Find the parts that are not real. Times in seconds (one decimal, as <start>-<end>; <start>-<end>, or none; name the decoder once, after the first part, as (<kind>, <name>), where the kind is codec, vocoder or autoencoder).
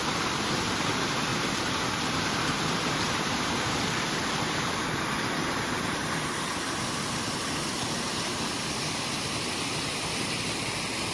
1.3-4.7 (vocoder, BigVGAN v2)